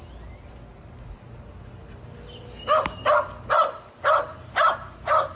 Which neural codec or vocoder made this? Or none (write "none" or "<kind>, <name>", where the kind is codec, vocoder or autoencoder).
none